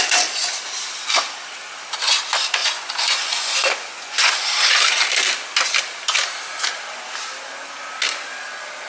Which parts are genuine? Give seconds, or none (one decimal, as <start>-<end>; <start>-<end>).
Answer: 0.0-2.6; 4.4-8.9